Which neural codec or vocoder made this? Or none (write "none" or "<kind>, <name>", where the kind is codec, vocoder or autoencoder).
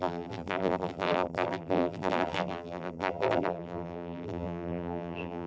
vocoder, BigVGAN v2